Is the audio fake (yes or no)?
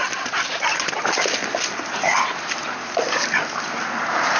no